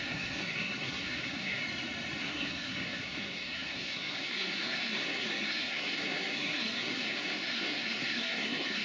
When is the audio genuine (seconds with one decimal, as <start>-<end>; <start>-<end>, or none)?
1.6-2.2